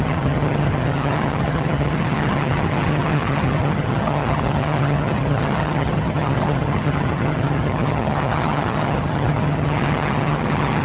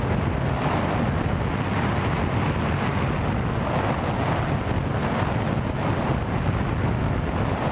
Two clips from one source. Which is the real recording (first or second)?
second